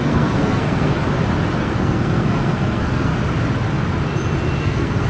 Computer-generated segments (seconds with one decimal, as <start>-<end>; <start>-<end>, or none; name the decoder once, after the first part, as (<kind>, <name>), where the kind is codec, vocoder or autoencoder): 0.0-1.0 (codec, SNAC); 1.6-3.1; 4.6-5.1